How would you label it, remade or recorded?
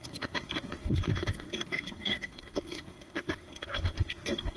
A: remade